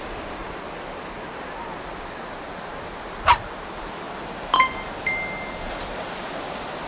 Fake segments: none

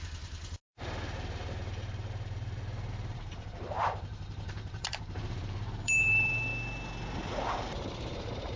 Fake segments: 0.0-6.5; 7.7-8.6

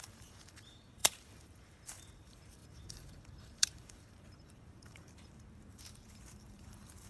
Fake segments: 0.0-7.1

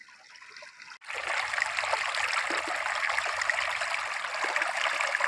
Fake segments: none

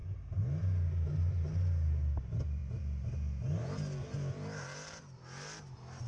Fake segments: none